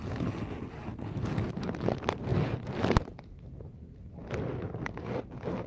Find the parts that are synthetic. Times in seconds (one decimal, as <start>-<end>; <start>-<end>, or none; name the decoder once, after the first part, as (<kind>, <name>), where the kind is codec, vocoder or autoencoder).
none